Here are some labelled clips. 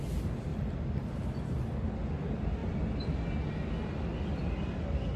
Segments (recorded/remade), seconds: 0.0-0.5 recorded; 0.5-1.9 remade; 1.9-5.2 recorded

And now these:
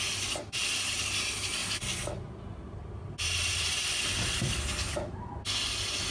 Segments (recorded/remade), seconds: 0.0-0.4 recorded; 0.4-1.1 remade; 1.1-1.6 recorded; 1.6-2.6 remade; 2.6-6.1 recorded

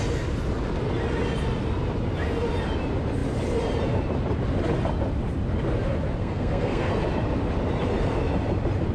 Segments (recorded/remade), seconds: 0.0-6.2 recorded; 6.2-6.9 remade; 6.9-8.9 recorded

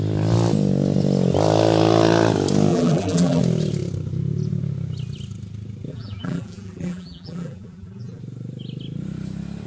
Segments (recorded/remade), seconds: 0.0-2.7 recorded; 2.7-3.4 remade; 3.4-5.9 recorded; 5.9-8.2 remade; 8.2-9.7 recorded

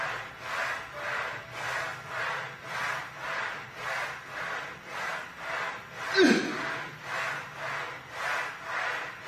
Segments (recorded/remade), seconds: 0.0-9.3 recorded